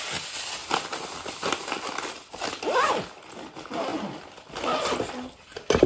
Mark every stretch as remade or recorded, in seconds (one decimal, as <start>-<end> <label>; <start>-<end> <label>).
0.0-5.9 recorded